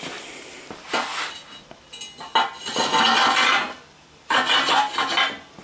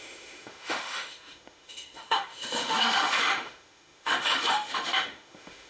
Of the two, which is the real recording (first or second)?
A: first